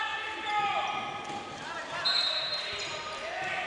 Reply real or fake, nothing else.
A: real